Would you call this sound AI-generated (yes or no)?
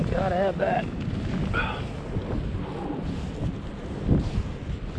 no